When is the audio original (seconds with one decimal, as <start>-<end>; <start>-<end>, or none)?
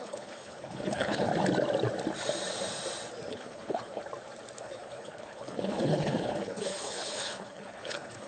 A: 1.3-3.3; 4.0-4.6